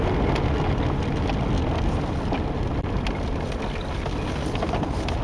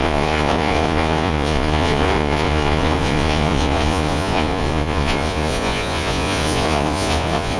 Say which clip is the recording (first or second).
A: first